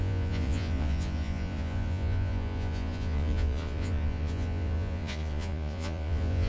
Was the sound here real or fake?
fake